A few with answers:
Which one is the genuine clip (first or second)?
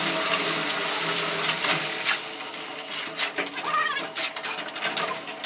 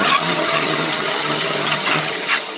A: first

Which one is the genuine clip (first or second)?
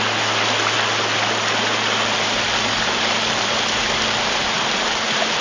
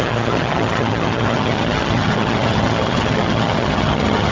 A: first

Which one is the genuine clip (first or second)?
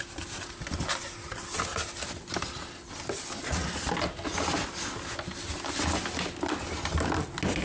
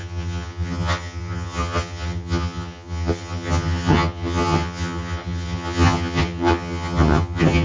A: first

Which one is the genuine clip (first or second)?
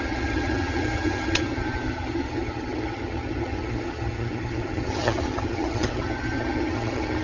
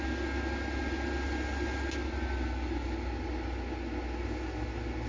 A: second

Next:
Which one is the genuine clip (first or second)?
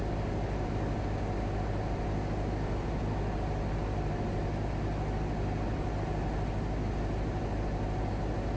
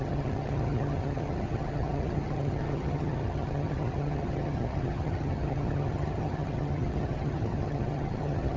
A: first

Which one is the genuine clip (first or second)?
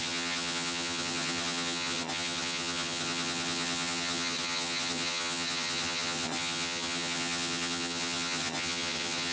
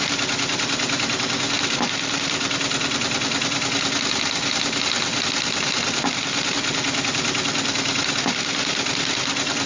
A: second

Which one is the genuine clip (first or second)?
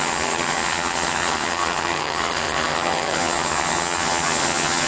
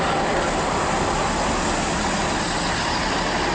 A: second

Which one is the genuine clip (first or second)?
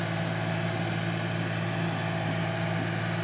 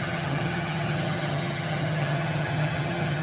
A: first